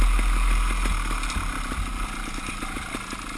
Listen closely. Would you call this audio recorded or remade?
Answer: recorded